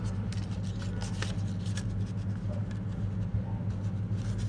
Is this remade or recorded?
recorded